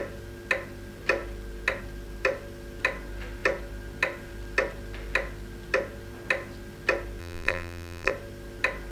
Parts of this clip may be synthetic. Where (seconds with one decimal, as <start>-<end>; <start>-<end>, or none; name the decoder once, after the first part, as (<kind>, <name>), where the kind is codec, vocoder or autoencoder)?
7.2-8.1 (vocoder, BigVGAN v2)